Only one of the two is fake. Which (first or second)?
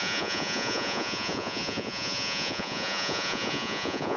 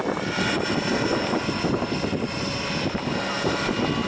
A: first